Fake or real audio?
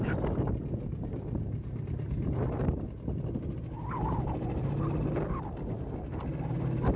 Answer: real